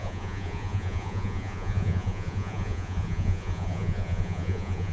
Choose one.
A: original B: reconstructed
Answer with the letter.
B